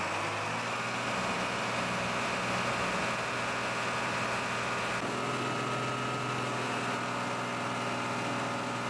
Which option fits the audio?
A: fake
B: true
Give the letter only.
B